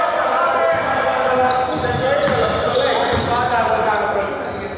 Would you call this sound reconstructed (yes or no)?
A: no